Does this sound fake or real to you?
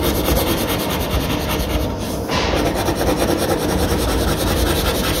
real